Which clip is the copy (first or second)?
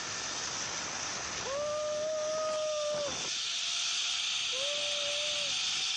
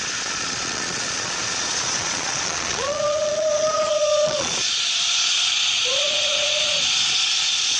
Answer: second